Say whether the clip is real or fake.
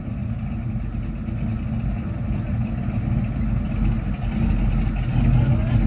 real